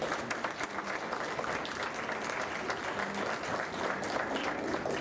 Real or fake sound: real